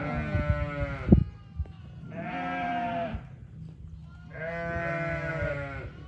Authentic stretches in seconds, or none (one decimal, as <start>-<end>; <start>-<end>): 0.0-6.1